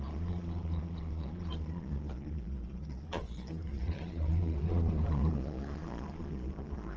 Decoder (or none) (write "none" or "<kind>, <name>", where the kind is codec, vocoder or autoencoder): vocoder, Vocos